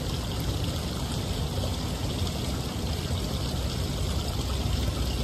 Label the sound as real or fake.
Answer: real